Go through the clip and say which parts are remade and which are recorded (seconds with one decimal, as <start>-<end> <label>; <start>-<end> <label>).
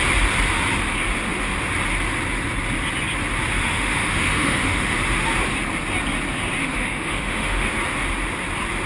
0.0-3.6 recorded; 3.6-5.0 remade; 5.0-6.6 recorded; 6.6-7.7 remade; 7.7-8.9 recorded